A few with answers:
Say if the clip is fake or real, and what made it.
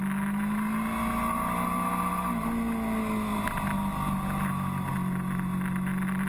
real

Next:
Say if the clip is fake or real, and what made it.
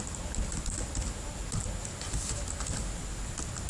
real